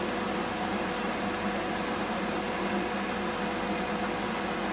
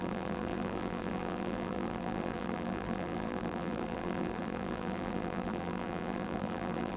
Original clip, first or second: first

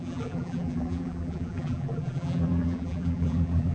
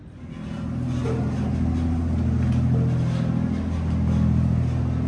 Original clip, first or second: second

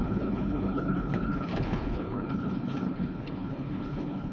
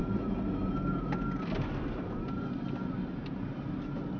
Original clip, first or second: second